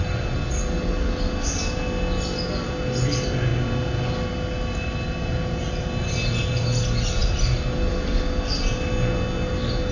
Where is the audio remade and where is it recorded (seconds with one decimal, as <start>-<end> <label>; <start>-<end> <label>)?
0.0-9.9 recorded